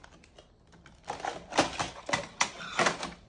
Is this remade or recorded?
recorded